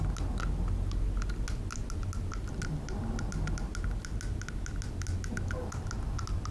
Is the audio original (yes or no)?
yes